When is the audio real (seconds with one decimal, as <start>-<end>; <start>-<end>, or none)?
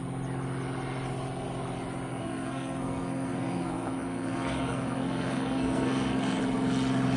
0.0-2.1; 6.4-7.2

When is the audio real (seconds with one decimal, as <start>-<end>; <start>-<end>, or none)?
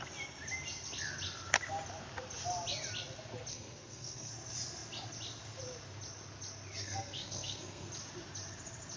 0.0-3.5; 4.3-6.8; 7.9-9.0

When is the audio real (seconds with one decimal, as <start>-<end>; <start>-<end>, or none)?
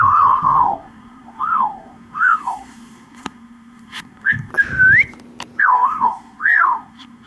4.5-5.6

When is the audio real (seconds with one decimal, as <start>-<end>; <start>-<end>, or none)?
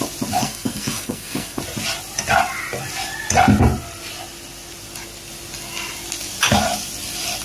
0.0-0.4; 1.6-7.4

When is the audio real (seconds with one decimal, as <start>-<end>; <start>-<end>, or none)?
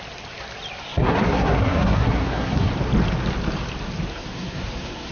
0.0-0.8; 2.7-4.1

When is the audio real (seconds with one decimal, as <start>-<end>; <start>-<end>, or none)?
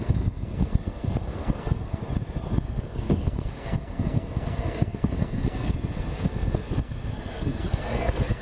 2.0-2.6